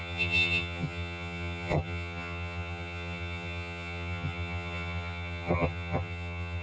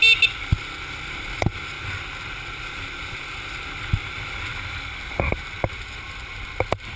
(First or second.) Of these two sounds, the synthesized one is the first